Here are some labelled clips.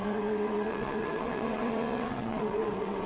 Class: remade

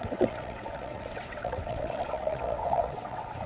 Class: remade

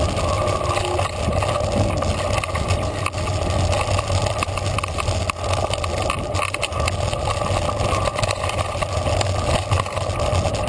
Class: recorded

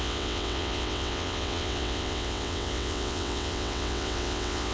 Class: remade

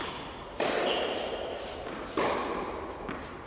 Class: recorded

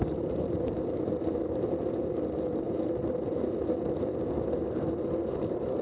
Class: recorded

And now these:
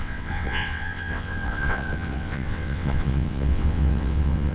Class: remade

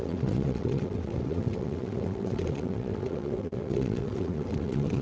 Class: remade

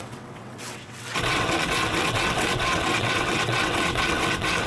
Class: remade